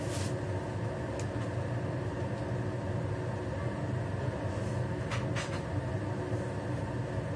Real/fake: real